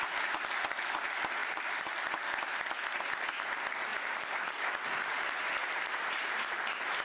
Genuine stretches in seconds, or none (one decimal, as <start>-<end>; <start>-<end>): 0.0-1.4; 1.9-3.9; 4.5-5.6